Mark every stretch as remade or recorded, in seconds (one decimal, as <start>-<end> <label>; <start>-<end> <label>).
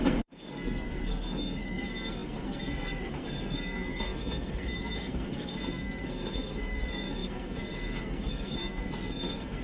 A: 0.0-9.6 remade